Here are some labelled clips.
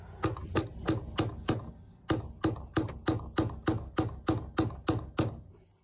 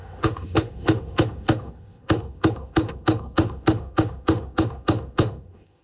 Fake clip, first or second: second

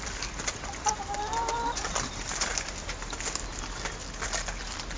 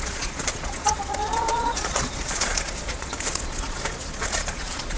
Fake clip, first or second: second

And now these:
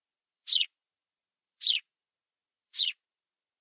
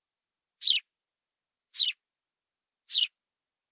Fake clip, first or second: first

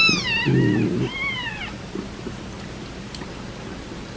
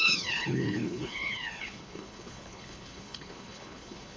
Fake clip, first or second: second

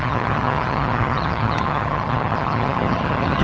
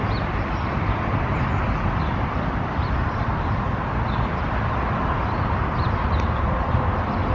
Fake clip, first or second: first